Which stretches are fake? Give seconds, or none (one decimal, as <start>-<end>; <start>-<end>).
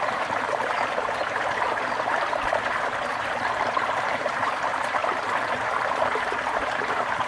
0.0-5.0; 5.5-7.3